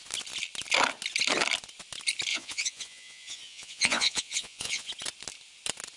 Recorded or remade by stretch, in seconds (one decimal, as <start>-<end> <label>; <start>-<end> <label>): 0.0-2.3 recorded; 2.3-4.9 remade; 4.9-6.0 recorded